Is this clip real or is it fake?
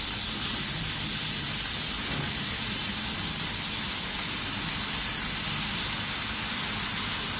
real